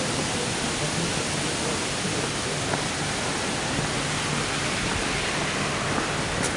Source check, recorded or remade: recorded